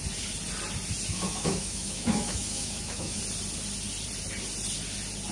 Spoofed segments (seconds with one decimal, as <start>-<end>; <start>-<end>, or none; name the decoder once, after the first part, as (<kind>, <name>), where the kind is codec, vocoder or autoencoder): 1.1-3.2 (autoencoder, DAC-VAE)